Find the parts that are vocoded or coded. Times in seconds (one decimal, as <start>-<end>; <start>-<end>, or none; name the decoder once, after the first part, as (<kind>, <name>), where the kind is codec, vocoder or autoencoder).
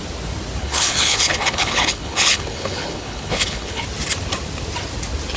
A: 0.6-3.8 (codec, HILCodec)